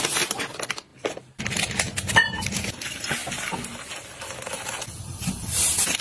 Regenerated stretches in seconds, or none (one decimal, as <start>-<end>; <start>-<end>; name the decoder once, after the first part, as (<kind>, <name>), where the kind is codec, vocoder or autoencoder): 0.0-3.2 (vocoder, BigVGAN v2); 5.3-6.0